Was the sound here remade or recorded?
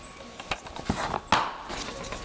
recorded